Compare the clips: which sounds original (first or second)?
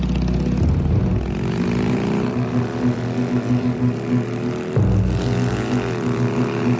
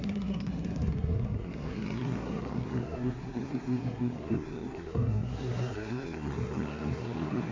first